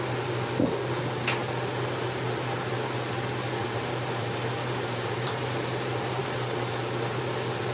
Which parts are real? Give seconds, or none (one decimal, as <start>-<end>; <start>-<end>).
0.0-3.6; 5.4-6.2; 7.2-7.7